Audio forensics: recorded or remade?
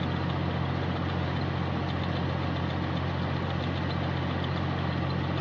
recorded